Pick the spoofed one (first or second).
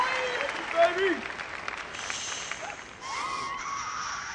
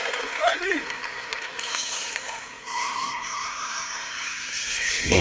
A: second